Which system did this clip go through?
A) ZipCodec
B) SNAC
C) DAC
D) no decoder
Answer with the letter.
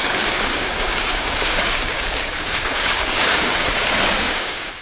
C